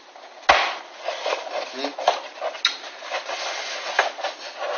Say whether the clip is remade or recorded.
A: recorded